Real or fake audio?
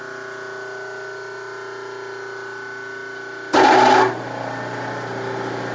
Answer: real